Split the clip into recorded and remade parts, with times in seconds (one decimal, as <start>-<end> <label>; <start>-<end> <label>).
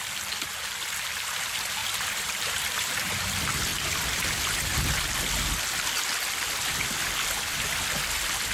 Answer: 0.0-1.8 recorded; 1.8-3.3 remade; 3.3-8.5 recorded